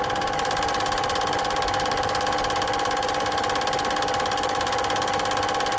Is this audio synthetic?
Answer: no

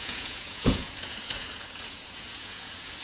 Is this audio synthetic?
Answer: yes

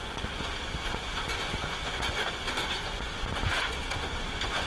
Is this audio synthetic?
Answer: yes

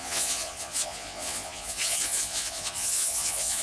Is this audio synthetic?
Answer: yes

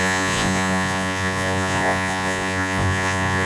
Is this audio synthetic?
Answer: yes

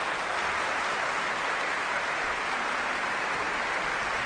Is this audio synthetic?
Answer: no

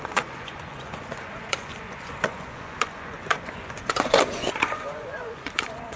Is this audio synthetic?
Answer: yes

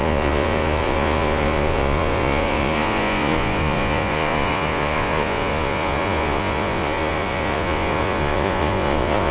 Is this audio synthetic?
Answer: yes